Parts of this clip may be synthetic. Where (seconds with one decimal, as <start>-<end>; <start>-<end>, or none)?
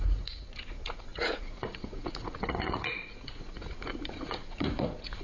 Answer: 0.0-5.2